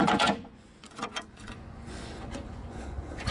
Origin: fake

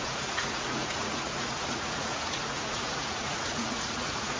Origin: fake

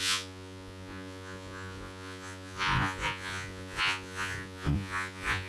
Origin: fake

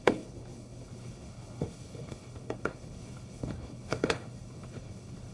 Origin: fake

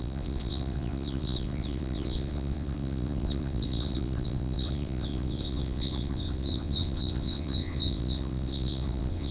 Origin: fake